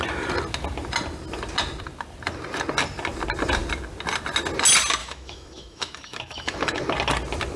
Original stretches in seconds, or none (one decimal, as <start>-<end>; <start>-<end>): 0.0-5.0; 6.8-7.6